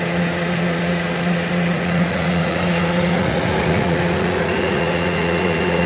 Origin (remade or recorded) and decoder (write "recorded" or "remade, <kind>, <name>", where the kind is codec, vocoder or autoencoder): remade, vocoder, Vocos